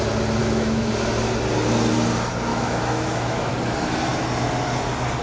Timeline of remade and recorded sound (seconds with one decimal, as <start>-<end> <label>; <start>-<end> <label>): 0.0-0.4 recorded; 0.4-0.9 remade; 0.9-2.5 recorded; 2.5-3.5 remade; 3.5-5.2 recorded